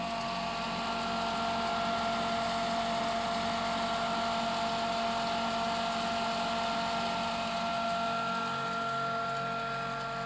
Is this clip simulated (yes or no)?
no